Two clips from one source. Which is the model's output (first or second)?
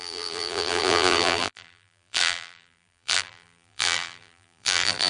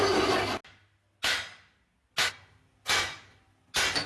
first